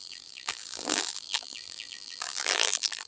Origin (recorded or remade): remade